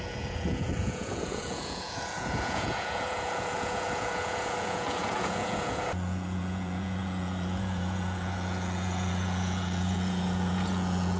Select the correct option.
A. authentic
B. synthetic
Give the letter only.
B